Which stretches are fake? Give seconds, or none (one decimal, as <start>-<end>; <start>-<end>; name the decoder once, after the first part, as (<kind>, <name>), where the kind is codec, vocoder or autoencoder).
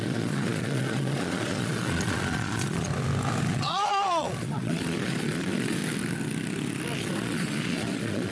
0.0-2.9 (vocoder, Vocos); 3.5-5.8; 7.0-8.3